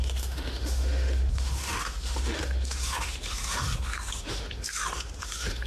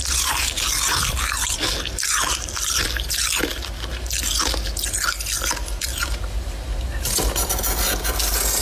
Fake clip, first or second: first